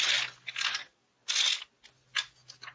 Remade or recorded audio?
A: recorded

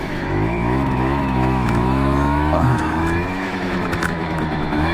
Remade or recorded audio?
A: remade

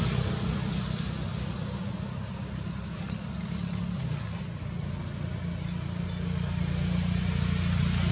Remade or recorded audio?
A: recorded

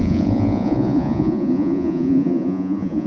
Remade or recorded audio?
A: remade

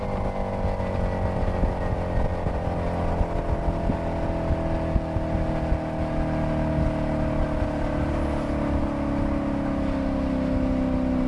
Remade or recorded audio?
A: recorded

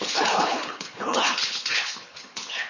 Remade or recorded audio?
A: remade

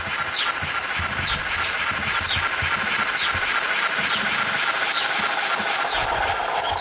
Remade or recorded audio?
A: recorded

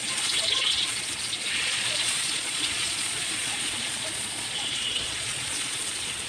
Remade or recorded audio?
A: remade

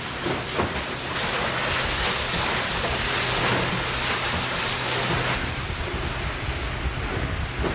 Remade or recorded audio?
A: recorded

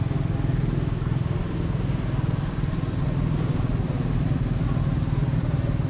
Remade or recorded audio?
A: recorded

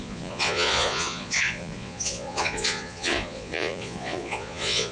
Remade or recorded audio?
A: remade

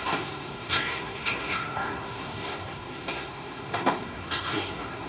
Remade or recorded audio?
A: remade